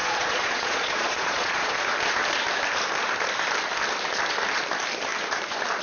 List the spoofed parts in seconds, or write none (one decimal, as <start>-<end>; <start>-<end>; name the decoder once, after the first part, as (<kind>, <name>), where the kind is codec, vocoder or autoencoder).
0.0-1.8 (vocoder, Vocos)